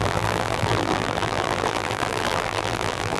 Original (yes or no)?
no